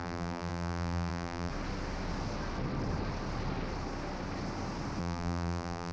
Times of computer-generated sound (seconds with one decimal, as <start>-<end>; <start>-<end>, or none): 0.0-1.5; 5.0-5.9